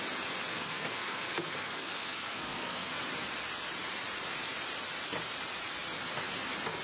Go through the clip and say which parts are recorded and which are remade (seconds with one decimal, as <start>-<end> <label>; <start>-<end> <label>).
0.0-0.5 recorded; 0.5-3.0 remade; 3.0-6.8 recorded